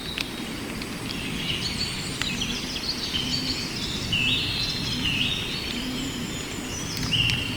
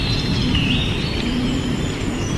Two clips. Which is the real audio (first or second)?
first